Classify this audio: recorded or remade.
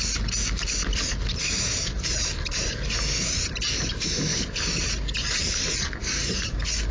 recorded